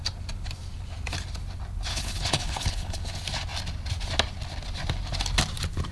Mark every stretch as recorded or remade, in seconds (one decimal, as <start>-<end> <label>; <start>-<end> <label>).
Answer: 0.0-1.9 recorded; 1.9-3.0 remade; 3.0-5.9 recorded